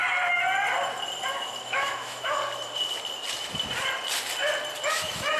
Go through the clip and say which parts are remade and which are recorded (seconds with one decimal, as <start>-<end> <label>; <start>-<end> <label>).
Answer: 0.0-1.3 recorded; 1.3-2.4 remade; 2.4-4.9 recorded; 4.9-5.4 remade